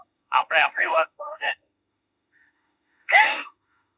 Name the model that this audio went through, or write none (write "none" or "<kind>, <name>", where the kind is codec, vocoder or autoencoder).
autoencoder, DAC-VAE